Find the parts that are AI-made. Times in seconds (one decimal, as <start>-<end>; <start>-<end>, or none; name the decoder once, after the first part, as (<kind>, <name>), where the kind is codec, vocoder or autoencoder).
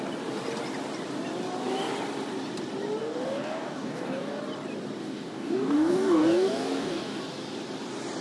3.0-4.4 (codec, DAC); 5.0-7.2